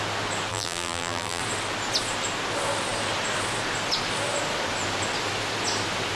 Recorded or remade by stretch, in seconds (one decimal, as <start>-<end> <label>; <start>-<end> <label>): 0.0-0.5 recorded; 0.5-1.4 remade; 1.4-6.2 recorded